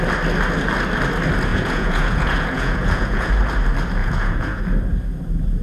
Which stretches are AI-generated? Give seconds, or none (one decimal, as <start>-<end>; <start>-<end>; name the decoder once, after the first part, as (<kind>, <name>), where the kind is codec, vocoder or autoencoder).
1.5-3.3 (vocoder, Vocos); 4.0-4.6